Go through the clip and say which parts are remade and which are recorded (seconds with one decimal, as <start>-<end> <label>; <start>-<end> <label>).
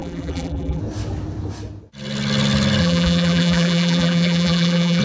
0.0-0.8 remade; 0.8-2.8 recorded; 2.8-5.0 remade